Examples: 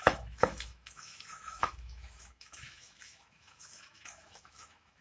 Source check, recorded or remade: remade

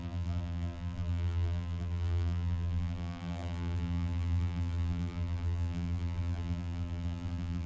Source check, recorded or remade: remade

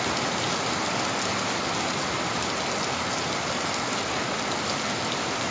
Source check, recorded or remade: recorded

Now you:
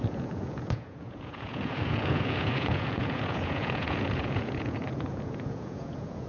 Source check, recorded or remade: remade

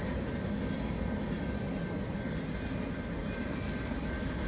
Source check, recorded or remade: recorded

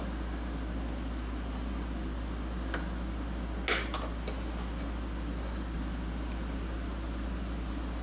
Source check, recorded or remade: recorded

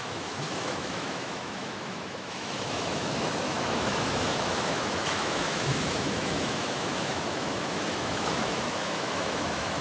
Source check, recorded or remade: remade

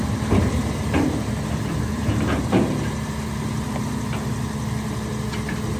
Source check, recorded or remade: recorded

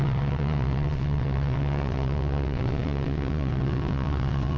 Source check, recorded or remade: remade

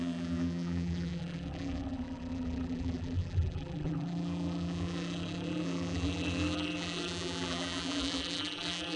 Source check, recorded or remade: remade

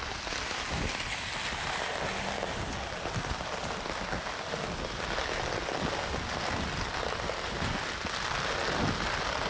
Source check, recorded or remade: recorded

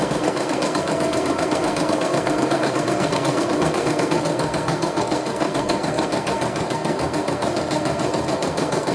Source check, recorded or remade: remade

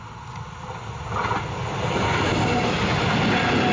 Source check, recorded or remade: recorded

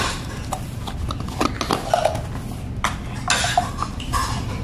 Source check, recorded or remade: recorded